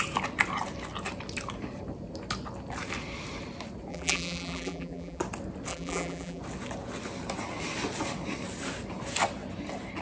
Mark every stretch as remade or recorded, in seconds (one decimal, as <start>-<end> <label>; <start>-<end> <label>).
0.0-3.9 recorded; 3.9-5.2 remade; 5.2-5.7 recorded; 5.7-6.4 remade; 6.4-10.0 recorded